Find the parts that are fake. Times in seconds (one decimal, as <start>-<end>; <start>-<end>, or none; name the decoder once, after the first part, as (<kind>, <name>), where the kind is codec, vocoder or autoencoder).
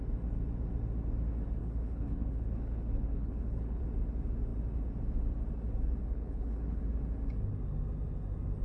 1.6-3.8 (codec, HILCodec); 6.0-6.8